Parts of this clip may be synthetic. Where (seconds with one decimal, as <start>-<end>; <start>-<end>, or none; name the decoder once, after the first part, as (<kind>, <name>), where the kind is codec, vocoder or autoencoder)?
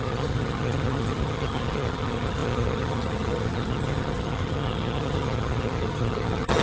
0.0-6.6 (vocoder, HiFi-GAN)